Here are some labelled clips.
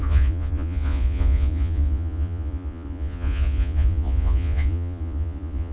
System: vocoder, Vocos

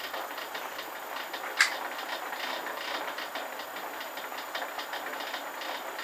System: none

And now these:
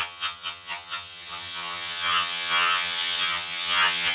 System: vocoder, HiFi-GAN